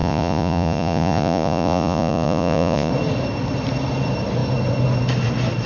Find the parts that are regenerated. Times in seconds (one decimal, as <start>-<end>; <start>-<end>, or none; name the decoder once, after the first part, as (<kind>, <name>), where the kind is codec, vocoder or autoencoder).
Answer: 0.0-2.9 (vocoder, Vocos)